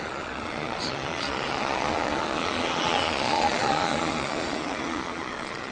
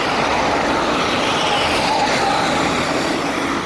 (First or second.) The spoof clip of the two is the first